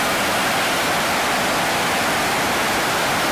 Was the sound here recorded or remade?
recorded